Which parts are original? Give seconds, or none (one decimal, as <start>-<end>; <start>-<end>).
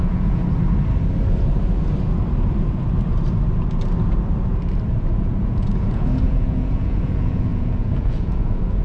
0.4-5.1